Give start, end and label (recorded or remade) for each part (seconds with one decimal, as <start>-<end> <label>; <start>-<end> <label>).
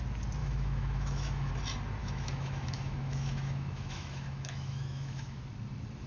0.0-0.4 recorded; 0.4-1.5 remade; 1.5-2.0 recorded; 2.0-5.4 remade; 5.4-6.1 recorded